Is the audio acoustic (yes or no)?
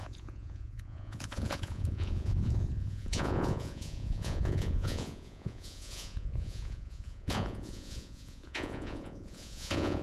no